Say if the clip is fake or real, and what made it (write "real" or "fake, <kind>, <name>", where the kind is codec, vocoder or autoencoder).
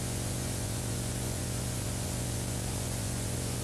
fake, vocoder, Vocos